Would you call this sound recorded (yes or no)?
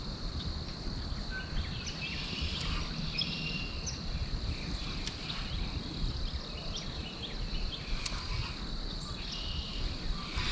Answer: yes